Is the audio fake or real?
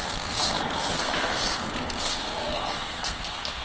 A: fake